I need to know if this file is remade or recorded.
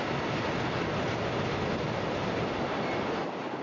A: recorded